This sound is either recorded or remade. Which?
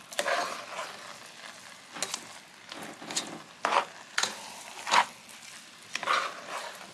recorded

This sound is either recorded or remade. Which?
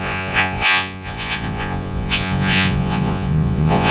remade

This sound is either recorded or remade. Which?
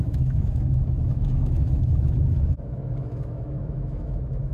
remade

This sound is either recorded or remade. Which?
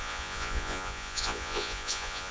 remade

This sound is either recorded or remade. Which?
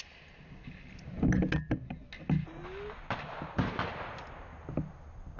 recorded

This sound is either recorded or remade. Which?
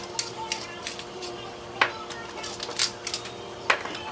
recorded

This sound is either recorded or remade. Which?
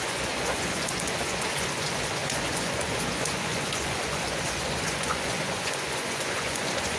remade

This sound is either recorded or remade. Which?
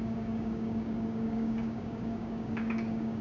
remade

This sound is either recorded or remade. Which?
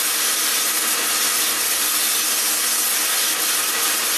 recorded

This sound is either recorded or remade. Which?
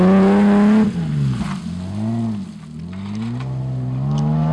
recorded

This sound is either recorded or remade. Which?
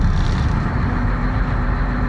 remade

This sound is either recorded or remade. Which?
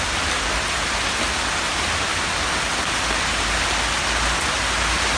recorded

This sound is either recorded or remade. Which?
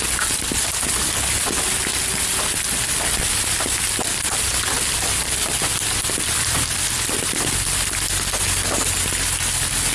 recorded